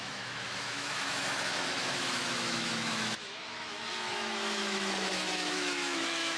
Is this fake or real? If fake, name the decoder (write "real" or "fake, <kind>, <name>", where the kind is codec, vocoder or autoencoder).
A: fake, autoencoder, DAC-VAE